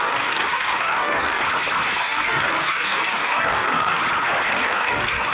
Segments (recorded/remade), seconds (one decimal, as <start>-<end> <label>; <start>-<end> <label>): 0.0-1.4 remade; 1.4-2.0 recorded; 2.0-4.0 remade; 4.0-4.5 recorded; 4.5-5.3 remade